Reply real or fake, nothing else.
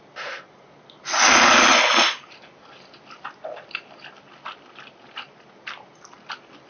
real